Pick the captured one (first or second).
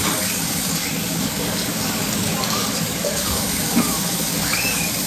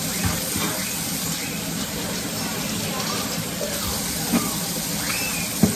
second